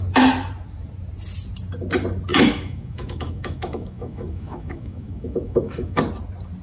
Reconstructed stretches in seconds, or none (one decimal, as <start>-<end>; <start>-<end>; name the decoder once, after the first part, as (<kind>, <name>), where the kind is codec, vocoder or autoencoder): 2.3-6.0 (autoencoder, DAC-VAE)